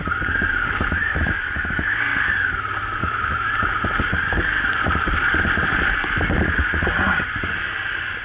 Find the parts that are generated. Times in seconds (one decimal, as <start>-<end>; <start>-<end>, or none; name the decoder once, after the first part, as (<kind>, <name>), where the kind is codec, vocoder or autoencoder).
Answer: 1.0-2.0 (autoencoder, DAC-VAE); 3.0-3.5